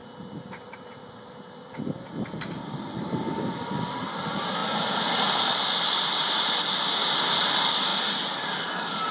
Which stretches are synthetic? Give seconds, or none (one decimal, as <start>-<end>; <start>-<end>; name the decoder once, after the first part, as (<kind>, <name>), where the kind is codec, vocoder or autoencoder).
none